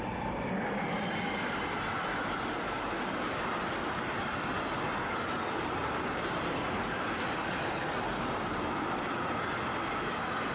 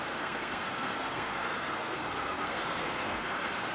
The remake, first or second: second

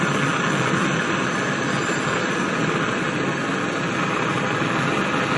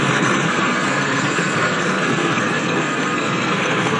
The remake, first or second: second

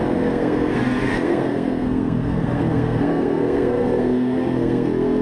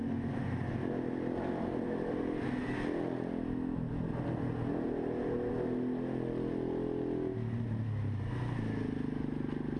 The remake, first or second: first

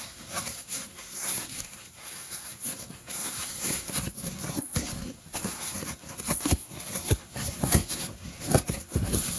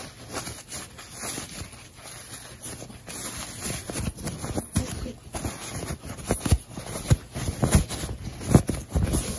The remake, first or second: first